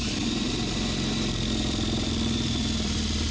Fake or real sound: fake